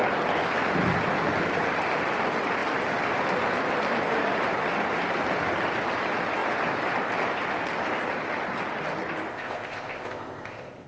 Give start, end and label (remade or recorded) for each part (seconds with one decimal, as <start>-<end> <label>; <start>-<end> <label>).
0.0-9.3 recorded; 9.3-10.9 remade